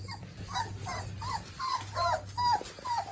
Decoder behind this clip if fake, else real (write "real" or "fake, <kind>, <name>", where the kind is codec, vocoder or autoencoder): real